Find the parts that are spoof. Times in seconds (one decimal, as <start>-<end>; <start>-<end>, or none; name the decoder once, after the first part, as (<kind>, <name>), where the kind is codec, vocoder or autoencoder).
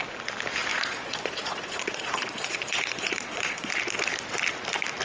0.7-3.7 (vocoder, Vocos)